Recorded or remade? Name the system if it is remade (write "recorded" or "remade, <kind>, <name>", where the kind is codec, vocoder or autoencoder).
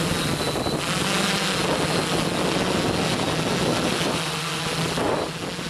recorded